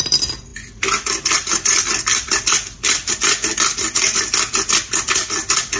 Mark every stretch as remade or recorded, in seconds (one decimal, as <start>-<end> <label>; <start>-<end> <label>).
0.0-5.8 recorded